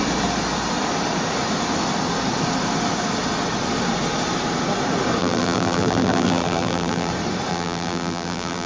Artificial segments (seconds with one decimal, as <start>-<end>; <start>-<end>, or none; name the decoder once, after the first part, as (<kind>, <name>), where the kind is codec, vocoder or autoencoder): 5.2-7.1 (vocoder, BigVGAN v2); 7.5-8.7